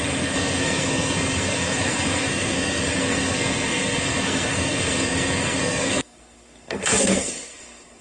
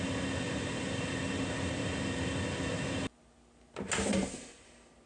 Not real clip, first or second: first